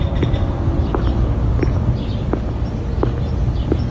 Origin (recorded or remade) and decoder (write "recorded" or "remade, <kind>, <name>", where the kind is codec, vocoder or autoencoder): recorded